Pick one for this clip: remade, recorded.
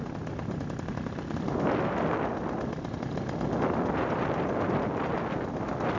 recorded